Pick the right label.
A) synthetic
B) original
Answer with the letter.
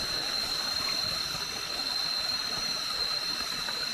A